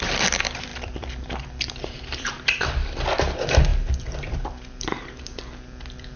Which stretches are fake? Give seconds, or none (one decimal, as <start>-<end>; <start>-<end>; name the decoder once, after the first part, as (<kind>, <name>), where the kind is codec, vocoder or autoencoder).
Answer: 0.0-3.7 (vocoder, BigVGAN v2); 4.3-6.2